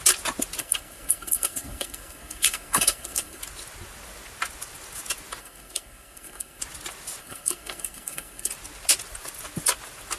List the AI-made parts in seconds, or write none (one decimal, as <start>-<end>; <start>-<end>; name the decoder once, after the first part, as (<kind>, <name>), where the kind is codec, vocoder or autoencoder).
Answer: 0.6-3.4 (codec, SNAC); 5.4-6.6; 7.2-8.5